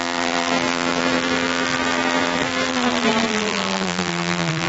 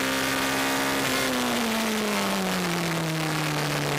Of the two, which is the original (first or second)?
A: second